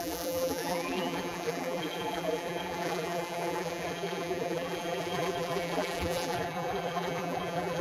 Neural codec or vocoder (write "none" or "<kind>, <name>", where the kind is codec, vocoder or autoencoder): vocoder, BigVGAN v2